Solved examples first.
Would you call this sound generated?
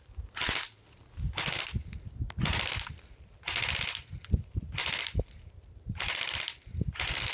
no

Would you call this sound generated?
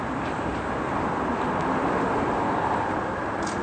yes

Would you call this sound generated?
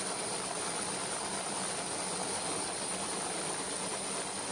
no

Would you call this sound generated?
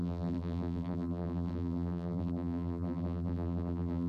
yes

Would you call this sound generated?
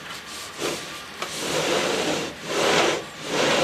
yes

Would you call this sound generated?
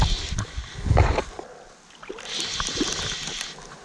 no